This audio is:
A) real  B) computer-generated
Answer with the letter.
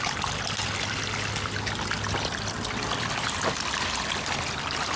A